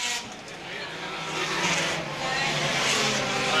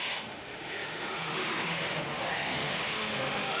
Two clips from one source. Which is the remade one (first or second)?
second